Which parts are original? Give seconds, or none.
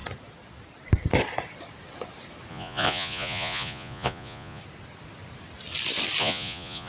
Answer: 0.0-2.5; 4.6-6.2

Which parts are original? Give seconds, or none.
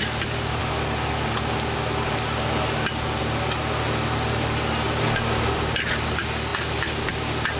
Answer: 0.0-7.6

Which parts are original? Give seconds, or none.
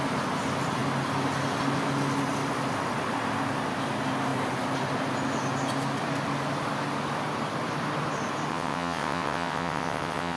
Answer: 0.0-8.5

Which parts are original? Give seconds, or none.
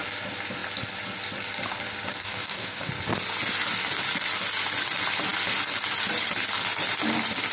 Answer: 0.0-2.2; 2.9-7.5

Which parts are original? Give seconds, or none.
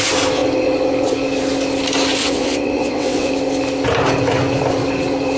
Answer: 0.0-2.2; 3.3-5.4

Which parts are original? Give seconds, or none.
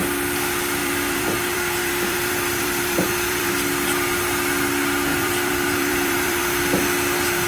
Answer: 0.0-0.8; 3.5-5.1; 6.6-7.5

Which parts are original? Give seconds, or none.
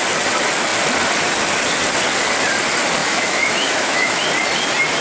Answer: 0.0-3.0; 4.3-5.0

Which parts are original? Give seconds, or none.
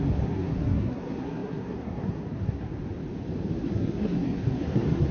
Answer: 2.7-3.6